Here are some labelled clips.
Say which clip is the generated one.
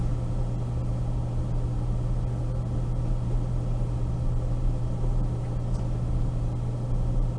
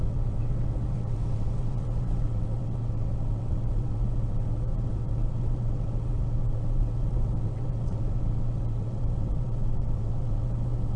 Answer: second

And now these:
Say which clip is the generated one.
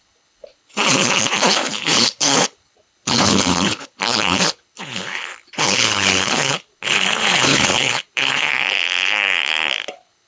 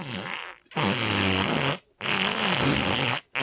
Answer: first